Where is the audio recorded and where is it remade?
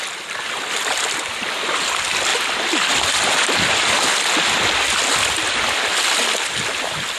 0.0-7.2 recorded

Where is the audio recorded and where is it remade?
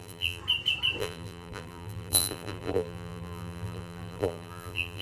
0.0-0.4 remade; 0.4-1.0 recorded; 1.0-5.0 remade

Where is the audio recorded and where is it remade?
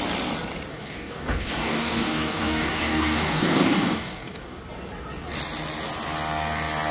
0.0-0.7 recorded; 0.7-4.6 remade; 4.6-6.9 recorded